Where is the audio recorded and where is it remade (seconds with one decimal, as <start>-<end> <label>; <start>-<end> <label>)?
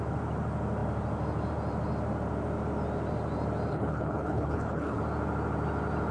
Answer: 0.0-3.7 recorded; 3.7-5.0 remade; 5.0-6.1 recorded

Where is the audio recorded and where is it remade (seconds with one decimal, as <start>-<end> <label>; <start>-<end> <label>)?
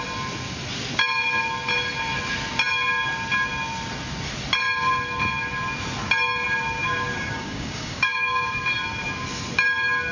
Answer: 0.0-6.8 recorded; 6.8-8.6 remade; 8.6-10.1 recorded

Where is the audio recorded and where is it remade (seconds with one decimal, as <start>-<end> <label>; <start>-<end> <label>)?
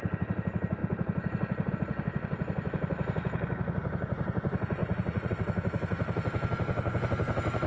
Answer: 0.0-4.8 recorded; 4.8-5.3 remade; 5.3-7.7 recorded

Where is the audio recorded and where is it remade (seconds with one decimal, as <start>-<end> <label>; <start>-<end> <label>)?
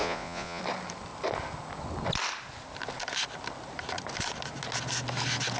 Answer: 0.0-0.6 remade; 0.6-5.6 recorded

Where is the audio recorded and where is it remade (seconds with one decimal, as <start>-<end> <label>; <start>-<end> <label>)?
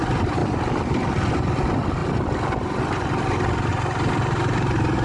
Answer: 0.0-5.0 recorded